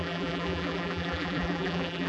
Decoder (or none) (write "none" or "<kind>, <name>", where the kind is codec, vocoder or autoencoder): vocoder, BigVGAN v2